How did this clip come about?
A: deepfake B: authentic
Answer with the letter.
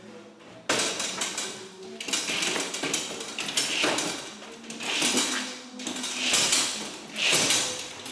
B